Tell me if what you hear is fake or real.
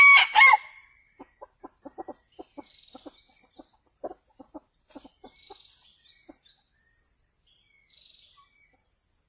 real